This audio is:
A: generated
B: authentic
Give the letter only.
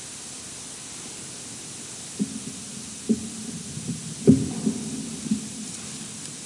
B